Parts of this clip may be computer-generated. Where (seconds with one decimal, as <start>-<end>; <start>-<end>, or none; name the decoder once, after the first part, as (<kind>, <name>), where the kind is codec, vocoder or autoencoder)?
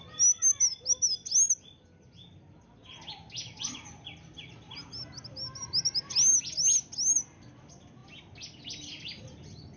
none